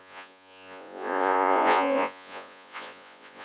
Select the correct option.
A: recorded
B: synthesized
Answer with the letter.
B